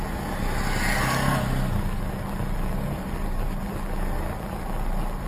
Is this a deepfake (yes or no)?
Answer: no